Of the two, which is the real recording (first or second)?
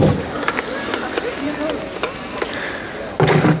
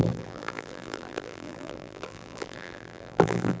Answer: first